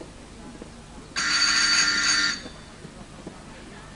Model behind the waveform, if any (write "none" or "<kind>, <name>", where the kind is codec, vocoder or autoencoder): none